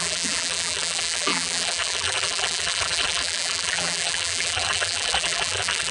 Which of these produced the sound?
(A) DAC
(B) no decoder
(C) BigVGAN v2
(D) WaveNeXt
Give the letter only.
C